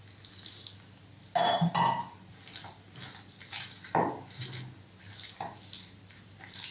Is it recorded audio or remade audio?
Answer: recorded